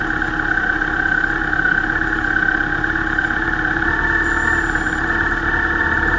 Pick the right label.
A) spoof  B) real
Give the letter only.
B